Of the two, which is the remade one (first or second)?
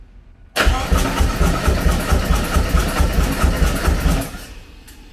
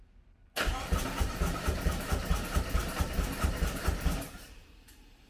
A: second